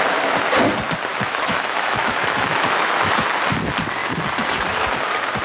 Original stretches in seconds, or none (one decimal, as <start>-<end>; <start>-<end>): 0.0-1.1; 3.1-5.4